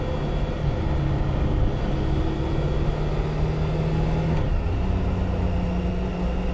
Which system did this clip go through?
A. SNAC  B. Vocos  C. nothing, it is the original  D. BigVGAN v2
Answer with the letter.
C